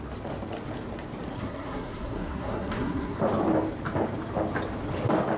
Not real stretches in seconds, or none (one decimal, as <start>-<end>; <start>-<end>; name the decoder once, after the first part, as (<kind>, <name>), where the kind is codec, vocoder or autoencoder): 1.3-3.2 (codec, SNAC)